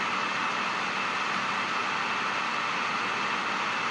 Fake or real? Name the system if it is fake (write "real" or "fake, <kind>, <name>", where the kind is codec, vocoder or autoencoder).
real